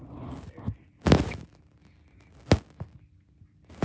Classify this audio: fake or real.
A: real